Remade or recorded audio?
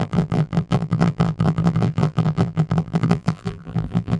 remade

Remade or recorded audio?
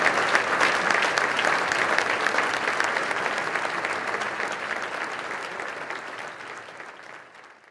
recorded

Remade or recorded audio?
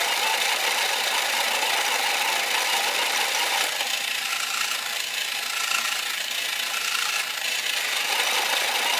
recorded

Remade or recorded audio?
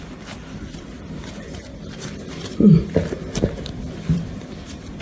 remade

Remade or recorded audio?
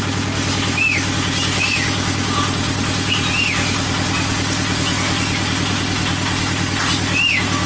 recorded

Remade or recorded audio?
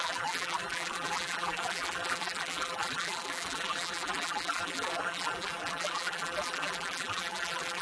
remade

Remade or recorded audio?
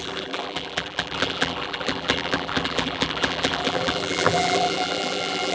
remade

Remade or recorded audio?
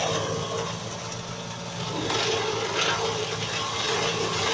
recorded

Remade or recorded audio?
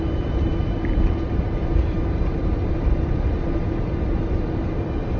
remade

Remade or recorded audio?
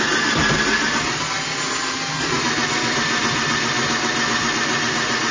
recorded